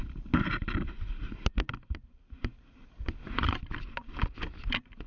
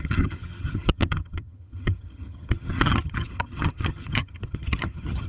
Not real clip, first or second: second